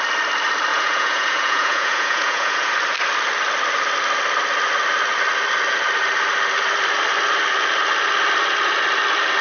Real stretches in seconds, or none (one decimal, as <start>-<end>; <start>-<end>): 0.0-0.7; 2.7-9.4